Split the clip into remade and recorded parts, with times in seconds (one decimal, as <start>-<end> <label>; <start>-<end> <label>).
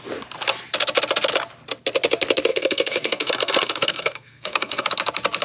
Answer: 0.0-2.5 recorded; 2.5-4.9 remade; 4.9-5.4 recorded